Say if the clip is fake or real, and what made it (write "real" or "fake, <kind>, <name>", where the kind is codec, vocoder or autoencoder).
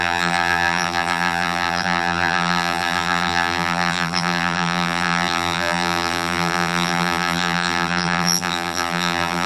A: fake, vocoder, BigVGAN v2